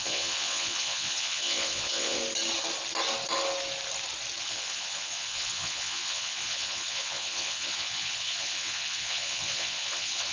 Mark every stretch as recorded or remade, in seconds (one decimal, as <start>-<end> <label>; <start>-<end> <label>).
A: 0.0-2.2 remade; 2.2-4.4 recorded; 4.4-10.3 remade